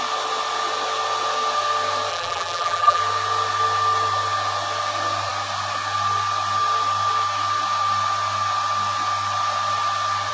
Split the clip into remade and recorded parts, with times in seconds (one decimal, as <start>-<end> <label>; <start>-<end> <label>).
0.0-2.1 recorded; 2.1-3.0 remade; 3.0-10.3 recorded